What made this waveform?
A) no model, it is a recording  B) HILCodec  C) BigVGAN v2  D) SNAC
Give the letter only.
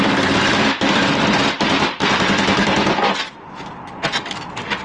C